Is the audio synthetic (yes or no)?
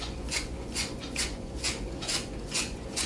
yes